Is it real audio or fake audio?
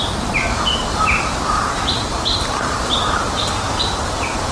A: fake